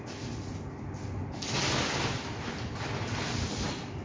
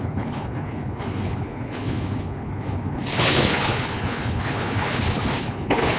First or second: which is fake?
second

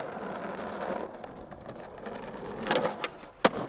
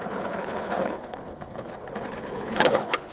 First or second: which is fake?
second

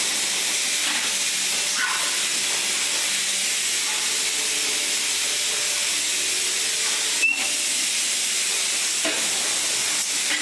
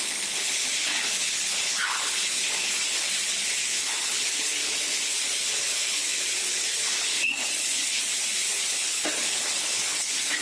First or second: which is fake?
second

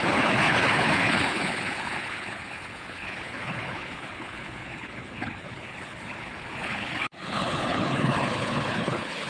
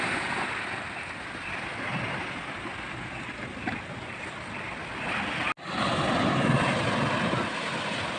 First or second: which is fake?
first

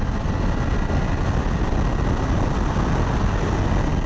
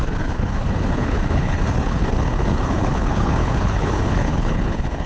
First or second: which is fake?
second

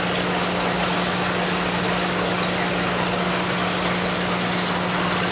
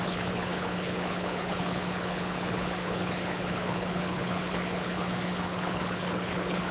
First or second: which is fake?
second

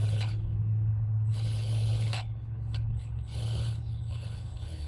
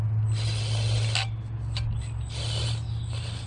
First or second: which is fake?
first